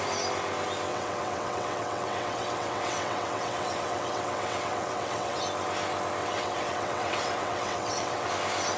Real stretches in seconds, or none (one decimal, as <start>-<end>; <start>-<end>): 0.0-0.9; 5.4-6.2; 8.3-8.8